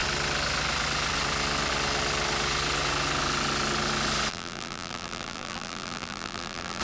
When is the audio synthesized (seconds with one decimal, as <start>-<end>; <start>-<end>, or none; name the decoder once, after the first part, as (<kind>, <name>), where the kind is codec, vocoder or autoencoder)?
4.3-6.8 (vocoder, BigVGAN v2)